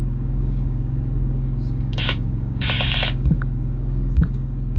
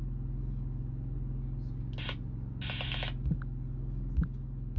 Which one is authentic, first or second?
second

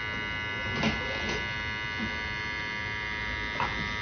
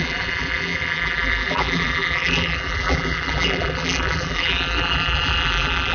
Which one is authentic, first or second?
first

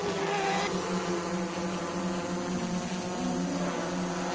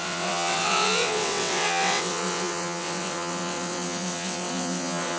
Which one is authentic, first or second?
first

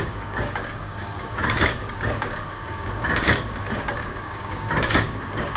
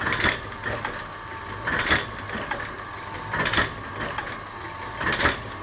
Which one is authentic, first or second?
second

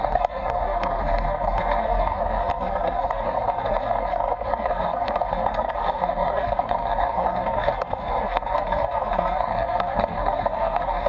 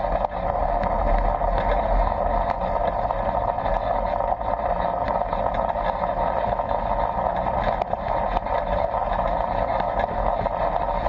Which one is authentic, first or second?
second